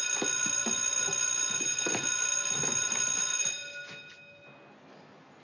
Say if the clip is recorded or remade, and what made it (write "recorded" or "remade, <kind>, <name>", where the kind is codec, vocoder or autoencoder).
recorded